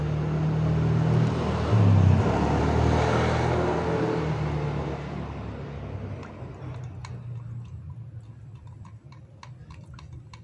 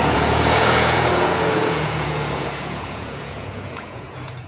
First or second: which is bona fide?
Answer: first